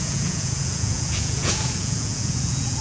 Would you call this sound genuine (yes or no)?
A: no